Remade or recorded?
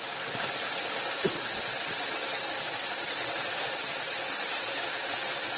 recorded